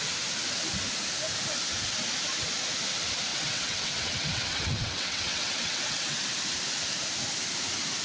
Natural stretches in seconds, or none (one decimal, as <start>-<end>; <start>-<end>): 0.0-3.3; 6.2-8.0